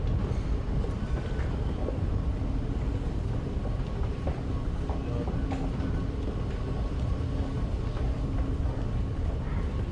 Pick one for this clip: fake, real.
real